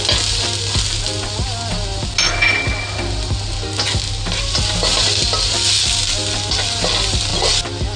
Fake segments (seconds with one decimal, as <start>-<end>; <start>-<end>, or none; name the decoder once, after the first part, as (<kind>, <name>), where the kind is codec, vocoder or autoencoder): none